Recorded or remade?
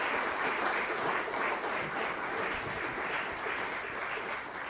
recorded